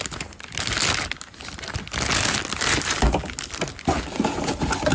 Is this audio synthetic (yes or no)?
no